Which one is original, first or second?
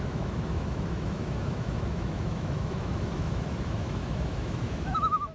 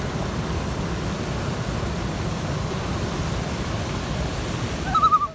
second